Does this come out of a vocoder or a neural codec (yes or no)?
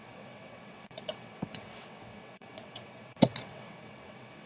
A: yes